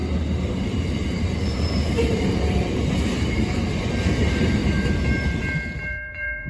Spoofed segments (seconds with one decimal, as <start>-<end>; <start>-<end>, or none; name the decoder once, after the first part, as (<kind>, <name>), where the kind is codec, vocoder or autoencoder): 0.5-6.5 (vocoder, BigVGAN v2)